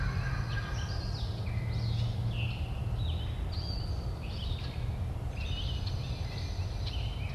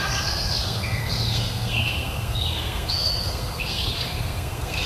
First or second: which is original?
first